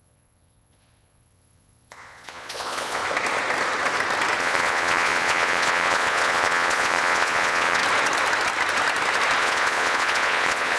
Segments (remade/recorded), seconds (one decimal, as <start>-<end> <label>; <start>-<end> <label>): 0.0-3.0 remade; 3.0-4.4 recorded; 4.4-7.8 remade; 7.8-9.4 recorded; 9.4-10.8 remade